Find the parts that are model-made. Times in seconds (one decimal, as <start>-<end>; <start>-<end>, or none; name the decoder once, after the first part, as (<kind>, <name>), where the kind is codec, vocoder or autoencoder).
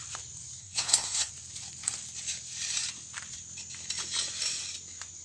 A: 0.6-1.3 (codec, SNAC)